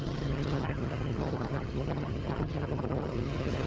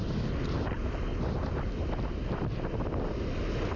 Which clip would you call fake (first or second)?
first